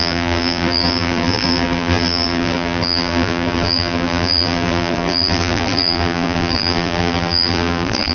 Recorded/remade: remade